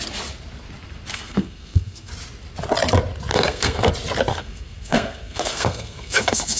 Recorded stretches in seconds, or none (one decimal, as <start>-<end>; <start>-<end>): 0.0-1.1; 2.1-3.3; 3.9-4.3